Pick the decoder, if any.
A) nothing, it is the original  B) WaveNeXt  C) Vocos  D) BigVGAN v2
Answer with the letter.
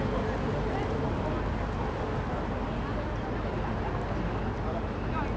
A